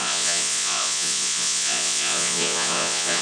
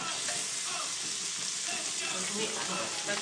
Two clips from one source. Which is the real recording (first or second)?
second